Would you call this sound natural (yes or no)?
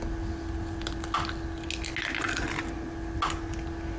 yes